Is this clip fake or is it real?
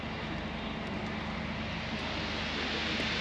real